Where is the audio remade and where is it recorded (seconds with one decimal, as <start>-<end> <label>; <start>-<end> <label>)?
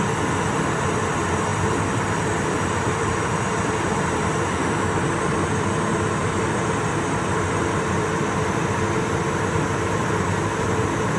0.0-11.2 recorded